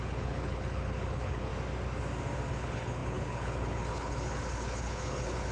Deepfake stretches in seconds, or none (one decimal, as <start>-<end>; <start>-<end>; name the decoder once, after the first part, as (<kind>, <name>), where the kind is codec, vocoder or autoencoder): 0.0-1.5 (codec, HILCodec); 2.5-5.5